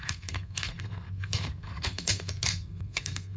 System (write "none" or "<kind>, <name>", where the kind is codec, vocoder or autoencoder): codec, SNAC